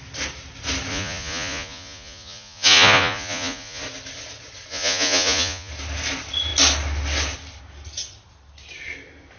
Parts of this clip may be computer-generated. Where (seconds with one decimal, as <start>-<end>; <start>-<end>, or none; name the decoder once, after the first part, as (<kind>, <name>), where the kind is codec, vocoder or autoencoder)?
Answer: 0.9-3.8 (vocoder, Vocos); 4.7-5.7